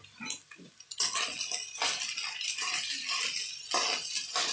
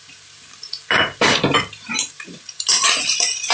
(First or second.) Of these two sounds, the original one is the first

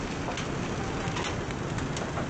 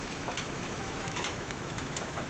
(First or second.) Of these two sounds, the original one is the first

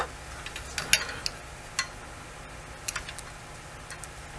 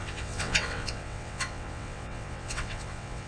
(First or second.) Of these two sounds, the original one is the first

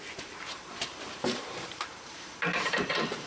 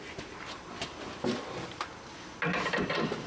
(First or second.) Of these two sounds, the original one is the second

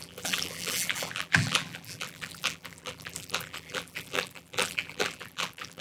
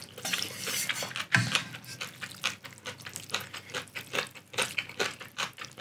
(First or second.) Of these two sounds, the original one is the second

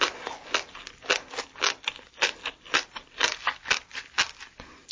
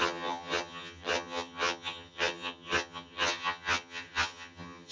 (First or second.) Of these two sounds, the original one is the first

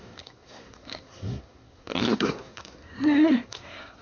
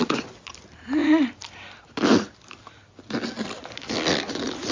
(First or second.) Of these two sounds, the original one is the second